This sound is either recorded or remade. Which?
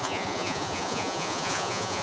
remade